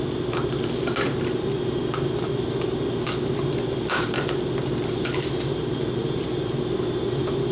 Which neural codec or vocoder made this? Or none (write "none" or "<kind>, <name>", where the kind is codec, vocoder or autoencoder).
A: none